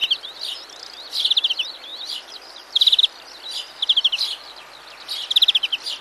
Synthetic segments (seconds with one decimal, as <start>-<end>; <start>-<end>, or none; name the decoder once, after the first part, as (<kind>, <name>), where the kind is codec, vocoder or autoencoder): 1.9-3.0 (vocoder, BigVGAN v2)